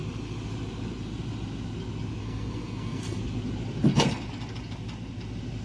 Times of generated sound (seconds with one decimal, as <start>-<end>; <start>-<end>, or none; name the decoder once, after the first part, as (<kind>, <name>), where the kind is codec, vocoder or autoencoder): 2.2-3.2 (codec, SNAC)